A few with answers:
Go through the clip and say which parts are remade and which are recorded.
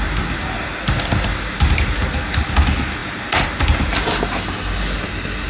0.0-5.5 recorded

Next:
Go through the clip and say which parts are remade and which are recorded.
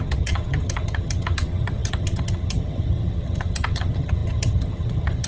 0.0-5.3 remade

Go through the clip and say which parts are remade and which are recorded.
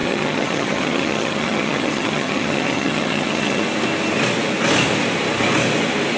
0.0-3.6 remade; 3.6-6.2 recorded